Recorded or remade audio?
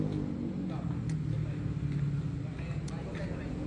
recorded